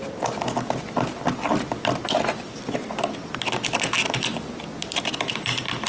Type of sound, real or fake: real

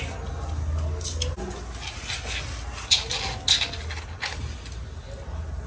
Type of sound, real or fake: real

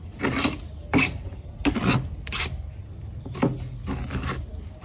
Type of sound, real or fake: real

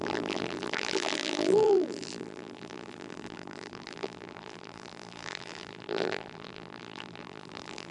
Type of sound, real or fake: fake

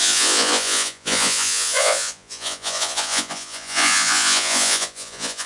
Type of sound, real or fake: fake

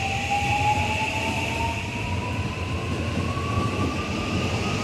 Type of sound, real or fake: real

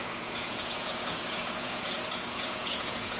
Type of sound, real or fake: fake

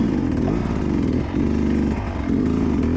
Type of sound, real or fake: real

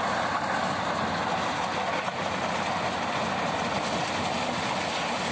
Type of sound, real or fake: real